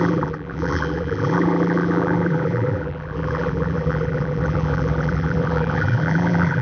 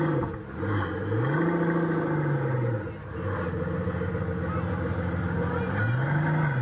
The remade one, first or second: first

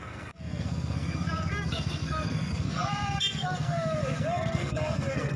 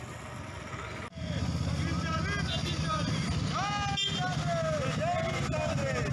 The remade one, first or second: first